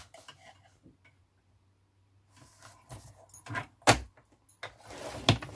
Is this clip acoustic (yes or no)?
yes